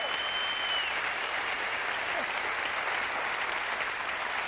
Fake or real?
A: real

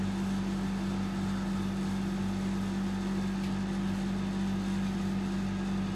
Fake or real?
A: real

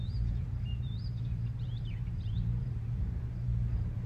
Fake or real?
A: fake